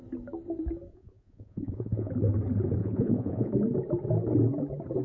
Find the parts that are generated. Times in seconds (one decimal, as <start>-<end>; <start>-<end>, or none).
0.9-2.1; 2.8-3.5